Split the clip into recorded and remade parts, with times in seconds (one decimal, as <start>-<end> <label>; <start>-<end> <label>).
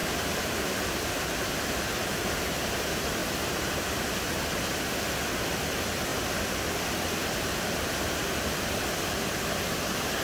0.0-1.2 remade; 1.2-6.1 recorded; 6.1-8.7 remade; 8.7-10.2 recorded